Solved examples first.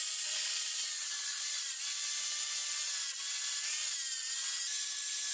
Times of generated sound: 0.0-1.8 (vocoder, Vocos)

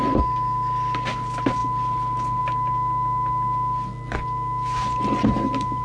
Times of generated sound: none

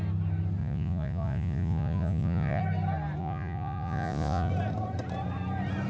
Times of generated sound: 0.6-2.6 (vocoder, Vocos); 3.2-4.5

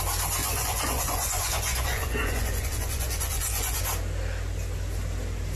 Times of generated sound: 0.4-3.8 (vocoder, Vocos)